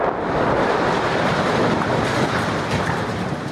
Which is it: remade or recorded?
recorded